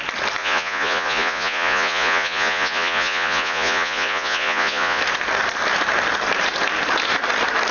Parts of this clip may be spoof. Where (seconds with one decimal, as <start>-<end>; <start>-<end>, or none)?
0.4-5.0